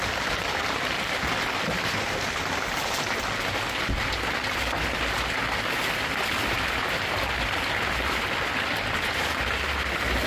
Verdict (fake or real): real